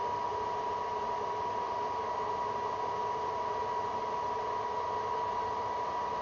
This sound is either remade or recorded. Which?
recorded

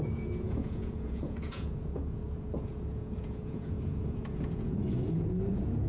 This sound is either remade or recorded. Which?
remade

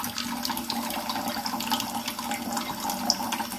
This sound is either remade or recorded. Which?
recorded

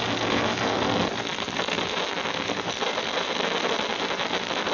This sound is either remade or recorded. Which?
recorded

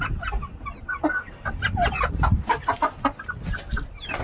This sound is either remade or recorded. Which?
recorded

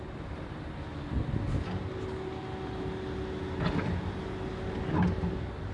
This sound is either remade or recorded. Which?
recorded